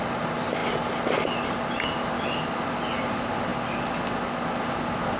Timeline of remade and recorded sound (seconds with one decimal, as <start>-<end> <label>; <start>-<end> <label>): 0.0-5.2 recorded

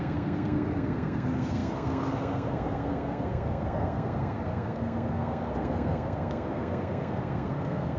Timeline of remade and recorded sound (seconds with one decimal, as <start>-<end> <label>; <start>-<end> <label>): 0.0-8.0 remade

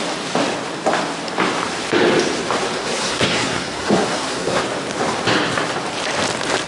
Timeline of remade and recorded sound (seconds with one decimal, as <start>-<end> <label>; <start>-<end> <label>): 0.0-2.8 recorded; 2.8-4.6 remade; 4.6-6.7 recorded

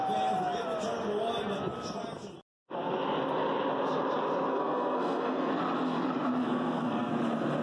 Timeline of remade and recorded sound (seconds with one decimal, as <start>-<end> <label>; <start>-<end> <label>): 0.0-4.5 recorded; 4.5-5.5 remade; 5.5-6.4 recorded; 6.4-7.1 remade; 7.1-7.6 recorded